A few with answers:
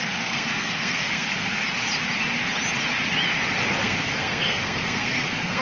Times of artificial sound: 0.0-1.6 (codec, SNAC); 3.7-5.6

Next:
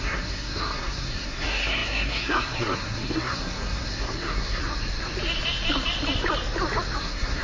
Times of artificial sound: 0.0-4.6 (codec, SNAC); 7.0-7.4

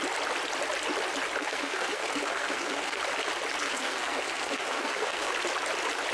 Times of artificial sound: 1.4-3.0 (codec, SNAC); 3.6-5.3